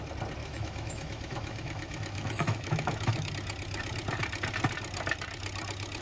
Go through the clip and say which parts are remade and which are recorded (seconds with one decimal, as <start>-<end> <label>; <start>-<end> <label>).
0.0-0.4 recorded; 0.4-3.3 remade; 3.3-6.0 recorded